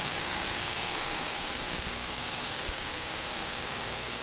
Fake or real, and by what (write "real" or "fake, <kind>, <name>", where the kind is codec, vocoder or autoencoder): fake, codec, SNAC